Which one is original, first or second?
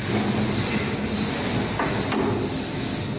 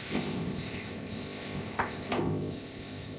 first